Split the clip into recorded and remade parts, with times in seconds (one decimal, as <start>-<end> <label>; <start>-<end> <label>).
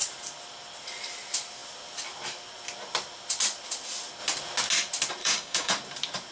0.0-5.2 recorded; 5.2-5.7 remade; 5.7-6.3 recorded